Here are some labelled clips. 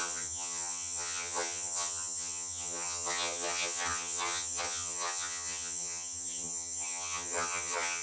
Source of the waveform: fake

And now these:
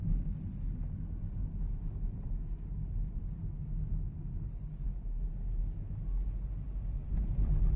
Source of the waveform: real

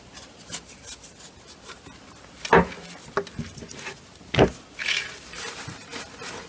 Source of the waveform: real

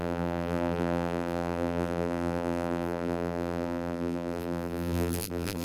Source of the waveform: fake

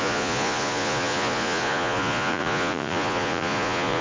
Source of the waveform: fake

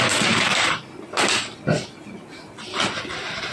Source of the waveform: real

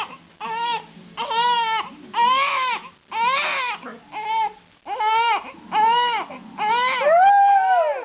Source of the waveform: real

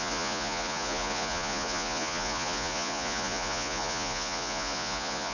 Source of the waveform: fake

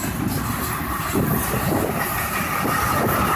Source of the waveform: real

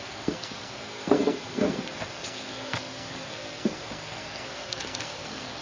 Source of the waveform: fake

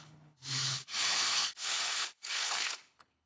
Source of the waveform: fake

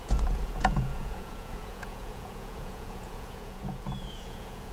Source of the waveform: fake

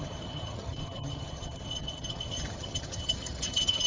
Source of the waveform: fake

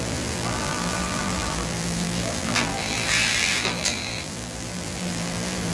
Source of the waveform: fake